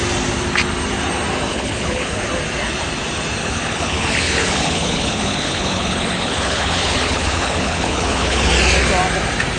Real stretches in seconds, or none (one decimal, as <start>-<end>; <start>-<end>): 0.0-1.5; 2.2-3.4; 8.5-9.6